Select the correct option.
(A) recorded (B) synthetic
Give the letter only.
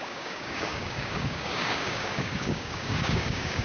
B